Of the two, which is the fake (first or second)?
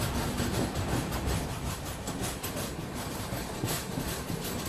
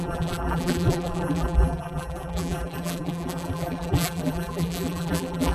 second